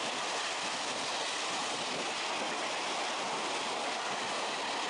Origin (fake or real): real